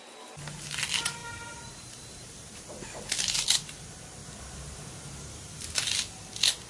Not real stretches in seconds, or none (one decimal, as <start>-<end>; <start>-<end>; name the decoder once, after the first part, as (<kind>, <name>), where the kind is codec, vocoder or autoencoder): 1.2-2.8 (vocoder, BigVGAN v2); 4.2-5.9